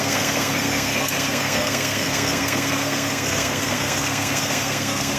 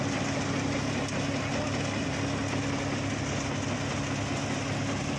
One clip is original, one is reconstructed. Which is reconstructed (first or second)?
first